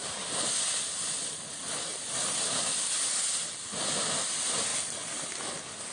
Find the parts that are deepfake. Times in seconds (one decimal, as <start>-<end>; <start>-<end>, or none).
none